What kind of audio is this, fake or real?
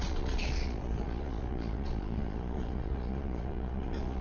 fake